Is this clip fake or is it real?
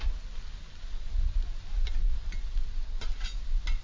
real